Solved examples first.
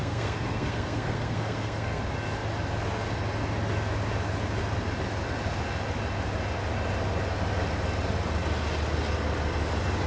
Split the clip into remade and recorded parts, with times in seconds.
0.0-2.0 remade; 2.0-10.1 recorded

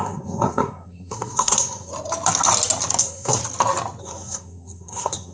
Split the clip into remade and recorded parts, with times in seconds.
0.0-1.9 remade; 1.9-3.0 recorded; 3.0-3.4 remade; 3.4-4.0 recorded; 4.0-5.3 remade

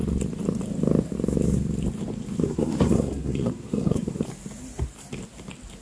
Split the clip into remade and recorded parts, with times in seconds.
0.0-2.4 recorded; 2.4-4.2 remade; 4.2-5.8 recorded

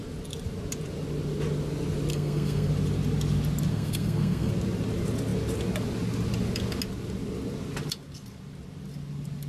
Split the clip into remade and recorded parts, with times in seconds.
0.0-2.1 recorded; 2.1-2.7 remade; 2.7-3.7 recorded; 3.7-4.5 remade; 4.5-9.5 recorded